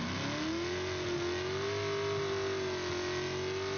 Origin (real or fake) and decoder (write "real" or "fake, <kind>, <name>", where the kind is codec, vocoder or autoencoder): real